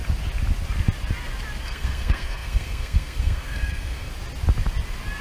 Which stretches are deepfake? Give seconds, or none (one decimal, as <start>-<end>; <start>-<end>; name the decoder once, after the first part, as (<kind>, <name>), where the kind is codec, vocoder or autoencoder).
1.6-4.1 (codec, SNAC)